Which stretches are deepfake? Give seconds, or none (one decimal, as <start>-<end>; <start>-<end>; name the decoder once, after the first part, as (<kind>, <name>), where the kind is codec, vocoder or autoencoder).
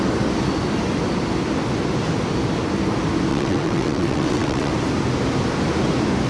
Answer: 3.3-4.7 (vocoder, WaveNeXt)